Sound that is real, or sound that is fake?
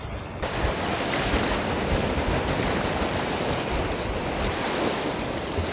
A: real